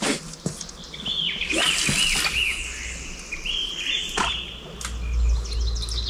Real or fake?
real